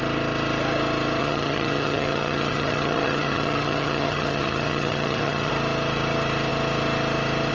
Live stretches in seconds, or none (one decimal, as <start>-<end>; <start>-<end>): 0.0-1.2; 5.5-7.5

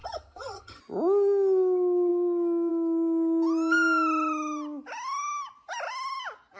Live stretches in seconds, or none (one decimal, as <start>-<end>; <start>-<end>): 0.8-6.6